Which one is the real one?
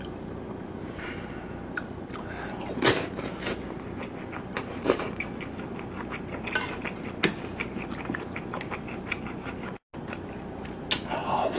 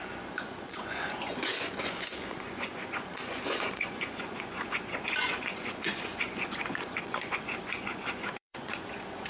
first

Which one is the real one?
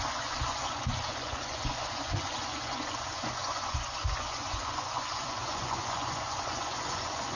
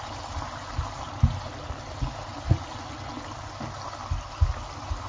second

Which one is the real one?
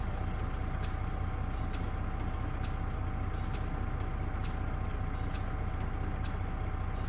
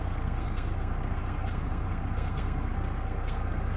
first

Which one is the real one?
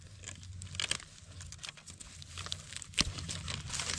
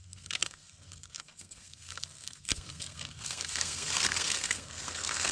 first